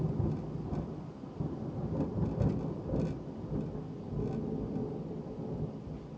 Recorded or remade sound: recorded